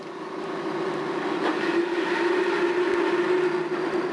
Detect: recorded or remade recorded